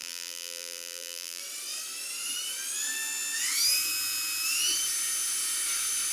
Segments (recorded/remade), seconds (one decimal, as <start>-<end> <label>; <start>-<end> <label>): 0.0-1.4 remade; 1.4-6.1 recorded